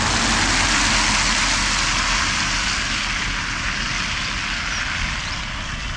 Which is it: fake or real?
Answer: real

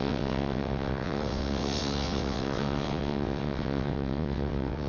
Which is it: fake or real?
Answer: fake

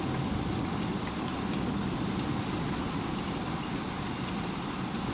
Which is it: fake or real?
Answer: real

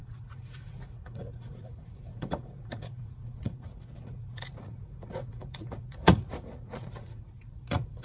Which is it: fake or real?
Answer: fake